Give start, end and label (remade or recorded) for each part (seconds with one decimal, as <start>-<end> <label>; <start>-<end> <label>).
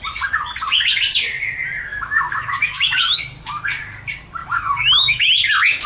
0.0-1.9 recorded; 1.9-3.2 remade; 3.2-4.4 recorded; 4.4-5.3 remade; 5.3-5.9 recorded